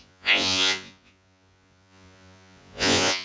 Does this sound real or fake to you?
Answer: fake